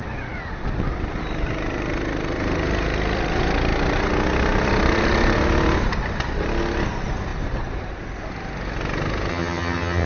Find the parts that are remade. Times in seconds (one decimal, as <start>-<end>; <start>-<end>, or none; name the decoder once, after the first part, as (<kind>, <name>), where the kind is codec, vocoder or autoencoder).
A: 9.3-10.1 (vocoder, HiFi-GAN)

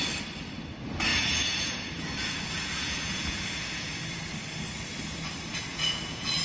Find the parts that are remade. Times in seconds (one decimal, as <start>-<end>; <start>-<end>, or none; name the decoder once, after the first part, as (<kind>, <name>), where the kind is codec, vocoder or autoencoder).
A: 1.1-4.2 (vocoder, Vocos); 5.7-6.4

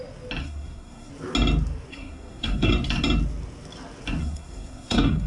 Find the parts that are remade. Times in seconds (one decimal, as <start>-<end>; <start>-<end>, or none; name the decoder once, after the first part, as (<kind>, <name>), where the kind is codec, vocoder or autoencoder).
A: 0.4-1.1 (codec, SNAC); 1.9-2.7; 4.2-5.3

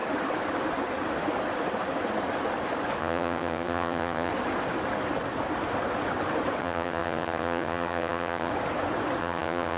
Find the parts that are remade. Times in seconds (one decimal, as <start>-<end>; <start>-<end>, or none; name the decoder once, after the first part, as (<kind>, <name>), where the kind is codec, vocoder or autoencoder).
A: 3.0-4.3 (vocoder, HiFi-GAN); 6.6-8.5; 9.2-9.8

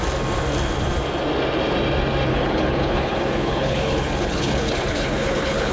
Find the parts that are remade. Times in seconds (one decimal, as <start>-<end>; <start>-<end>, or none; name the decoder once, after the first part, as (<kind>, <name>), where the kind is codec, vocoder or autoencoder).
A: 2.3-5.7 (codec, HILCodec)